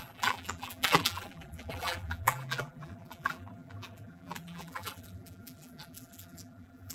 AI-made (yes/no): yes